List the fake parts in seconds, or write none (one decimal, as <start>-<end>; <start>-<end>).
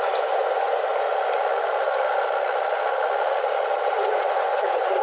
0.0-0.9; 3.9-5.0